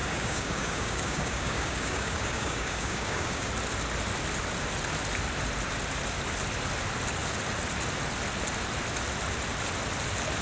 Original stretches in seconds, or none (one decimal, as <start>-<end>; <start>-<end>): 3.5-10.4